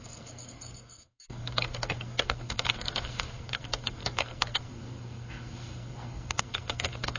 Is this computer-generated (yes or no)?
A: yes